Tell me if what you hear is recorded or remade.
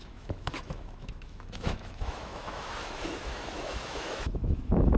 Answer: remade